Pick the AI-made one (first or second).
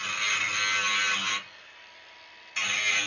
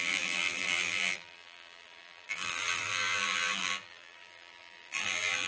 second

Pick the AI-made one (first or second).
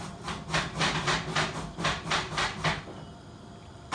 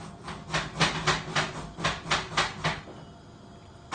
first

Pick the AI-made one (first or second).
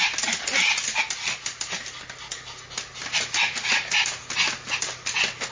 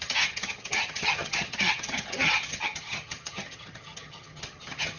second